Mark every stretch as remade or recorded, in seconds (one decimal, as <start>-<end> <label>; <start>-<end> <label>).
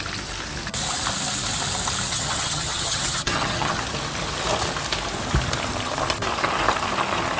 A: 0.0-2.1 recorded; 2.1-3.8 remade; 3.8-7.4 recorded